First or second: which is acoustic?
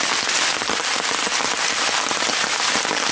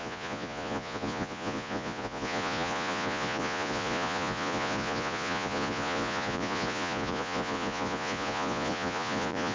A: first